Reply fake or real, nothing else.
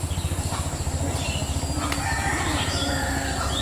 real